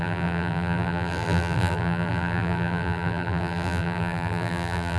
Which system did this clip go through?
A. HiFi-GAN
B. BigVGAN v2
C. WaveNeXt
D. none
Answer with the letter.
B